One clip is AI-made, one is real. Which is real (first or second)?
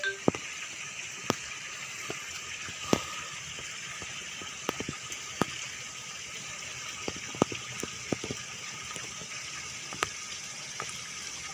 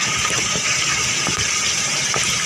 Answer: first